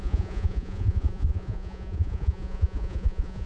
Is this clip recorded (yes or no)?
no